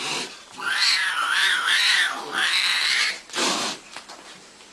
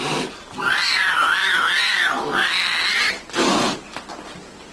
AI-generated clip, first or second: first